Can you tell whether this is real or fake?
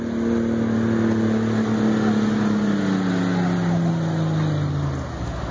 real